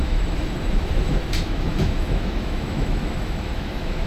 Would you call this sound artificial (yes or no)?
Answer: yes